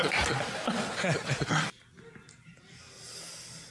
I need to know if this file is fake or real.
real